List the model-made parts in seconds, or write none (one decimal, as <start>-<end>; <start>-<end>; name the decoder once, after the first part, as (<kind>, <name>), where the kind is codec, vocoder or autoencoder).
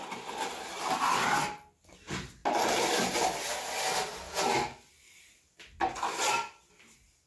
none